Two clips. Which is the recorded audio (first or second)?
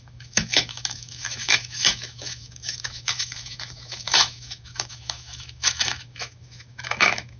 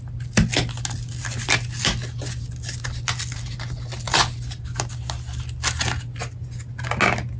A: second